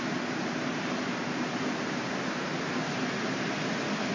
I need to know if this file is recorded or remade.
recorded